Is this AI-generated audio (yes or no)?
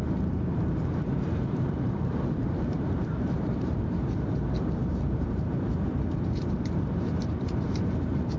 yes